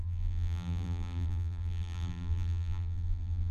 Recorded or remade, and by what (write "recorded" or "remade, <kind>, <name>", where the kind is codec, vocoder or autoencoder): remade, vocoder, BigVGAN v2